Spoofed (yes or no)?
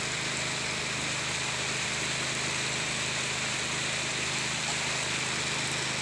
no